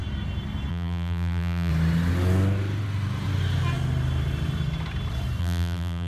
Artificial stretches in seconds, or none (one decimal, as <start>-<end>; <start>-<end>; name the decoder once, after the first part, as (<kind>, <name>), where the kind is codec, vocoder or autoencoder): 0.7-1.7 (vocoder, BigVGAN v2); 5.4-6.1